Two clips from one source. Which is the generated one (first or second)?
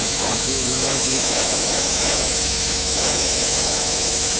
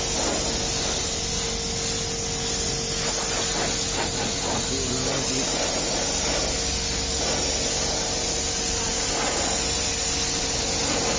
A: first